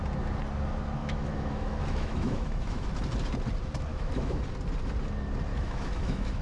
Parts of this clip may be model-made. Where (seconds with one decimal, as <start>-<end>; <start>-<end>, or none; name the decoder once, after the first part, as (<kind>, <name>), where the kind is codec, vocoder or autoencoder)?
1.0-2.9 (autoencoder, DAC-VAE); 3.9-4.4; 5.5-6.4